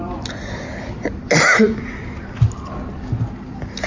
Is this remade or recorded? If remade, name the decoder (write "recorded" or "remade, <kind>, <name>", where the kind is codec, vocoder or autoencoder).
recorded